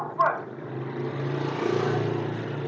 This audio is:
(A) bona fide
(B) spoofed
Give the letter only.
A